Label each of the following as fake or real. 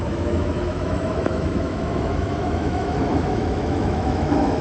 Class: fake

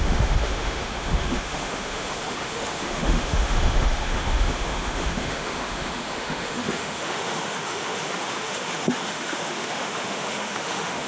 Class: fake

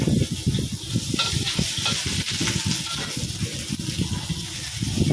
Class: real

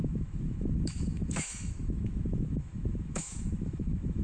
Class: fake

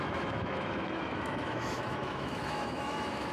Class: fake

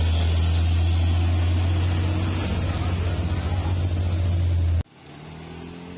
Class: real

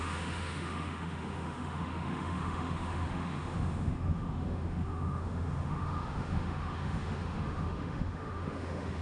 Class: fake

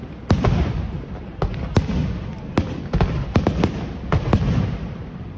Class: real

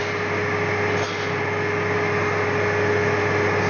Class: real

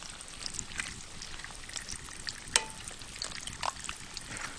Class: real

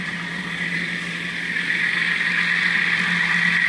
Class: real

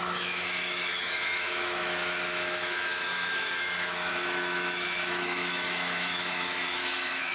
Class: fake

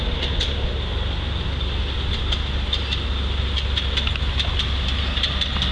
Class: real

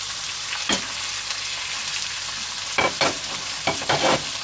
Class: real